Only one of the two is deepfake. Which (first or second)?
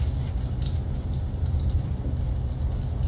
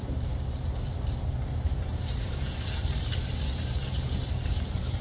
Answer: second